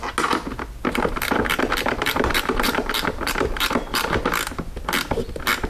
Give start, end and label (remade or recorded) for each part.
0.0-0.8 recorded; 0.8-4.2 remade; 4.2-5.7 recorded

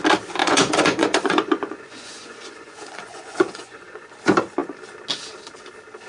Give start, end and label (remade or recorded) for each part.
0.0-0.4 recorded; 0.4-4.1 remade; 4.1-6.1 recorded

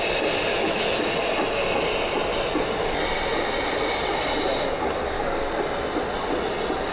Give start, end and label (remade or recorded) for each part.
0.0-0.5 recorded; 0.5-1.0 remade; 1.0-6.9 recorded

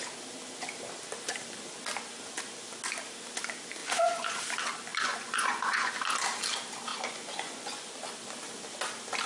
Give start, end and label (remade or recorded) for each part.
0.0-3.8 recorded; 3.8-4.4 remade; 4.4-4.9 recorded; 4.9-5.9 remade; 5.9-6.9 recorded; 6.9-7.9 remade; 7.9-9.3 recorded

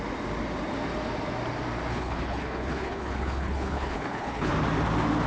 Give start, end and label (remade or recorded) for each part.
0.0-1.9 recorded; 1.9-4.5 remade; 4.5-5.3 recorded